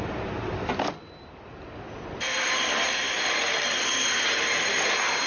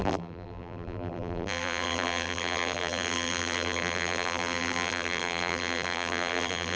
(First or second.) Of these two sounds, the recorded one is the first